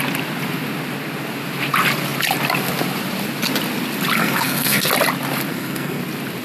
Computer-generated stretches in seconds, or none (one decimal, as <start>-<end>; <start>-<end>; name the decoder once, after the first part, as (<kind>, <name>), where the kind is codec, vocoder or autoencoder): 4.2-4.9 (codec, SNAC); 5.5-6.0